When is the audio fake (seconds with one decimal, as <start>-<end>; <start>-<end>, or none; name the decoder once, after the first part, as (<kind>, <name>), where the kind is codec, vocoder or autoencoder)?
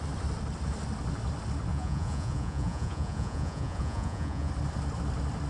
1.7-4.5 (vocoder, Vocos)